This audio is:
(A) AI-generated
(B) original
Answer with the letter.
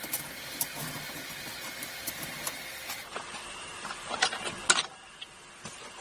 B